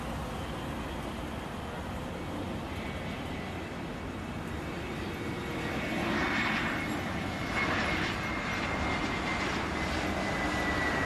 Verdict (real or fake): real